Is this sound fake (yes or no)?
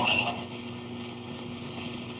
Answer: yes